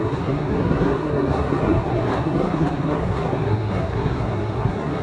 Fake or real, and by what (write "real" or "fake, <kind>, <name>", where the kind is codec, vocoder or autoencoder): fake, codec, SNAC